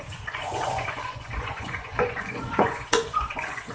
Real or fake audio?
fake